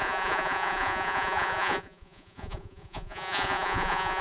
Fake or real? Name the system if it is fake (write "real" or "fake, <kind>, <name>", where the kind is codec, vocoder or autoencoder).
fake, vocoder, Vocos